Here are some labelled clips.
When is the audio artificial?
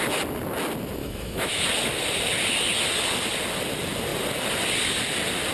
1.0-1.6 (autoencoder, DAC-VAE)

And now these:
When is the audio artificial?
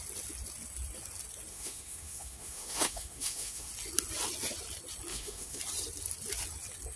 1.5-3.7 (autoencoder, DAC-VAE); 5.1-5.6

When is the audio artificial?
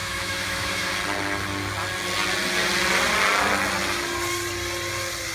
0.0-0.9 (autoencoder, DAC-VAE)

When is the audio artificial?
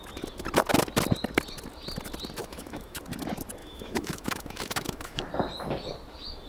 2.4-3.0 (autoencoder, DAC-VAE); 3.6-5.2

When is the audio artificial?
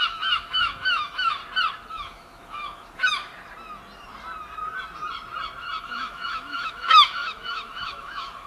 0.0-1.4 (autoencoder, DAC-VAE); 1.9-3.3; 5.8-8.5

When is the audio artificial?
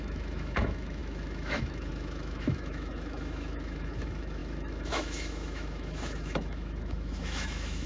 0.0-7.9 (autoencoder, DAC-VAE)